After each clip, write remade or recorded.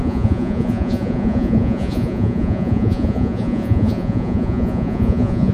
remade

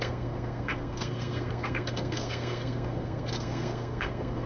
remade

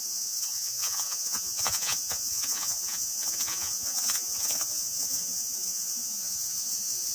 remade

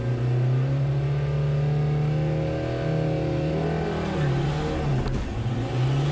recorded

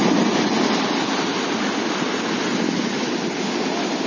recorded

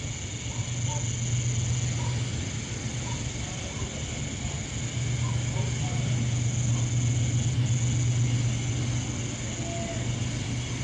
recorded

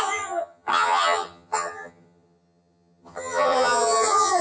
remade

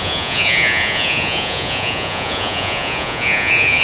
remade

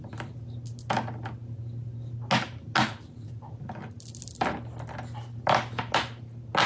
recorded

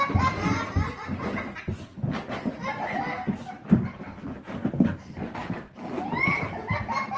recorded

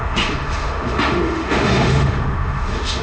remade